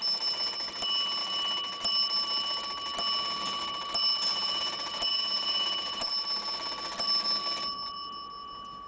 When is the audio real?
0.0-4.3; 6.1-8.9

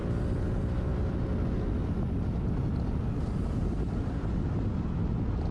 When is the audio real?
0.0-5.5

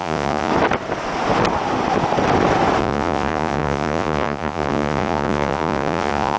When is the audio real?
0.5-2.8

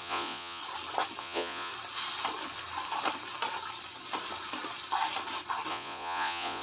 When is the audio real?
0.6-1.2; 1.7-5.7

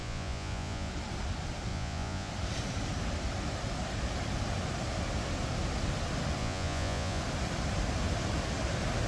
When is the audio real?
0.9-1.7; 2.3-6.4; 7.2-9.1

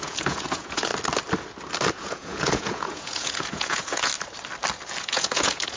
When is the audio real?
0.9-1.9; 4.1-5.0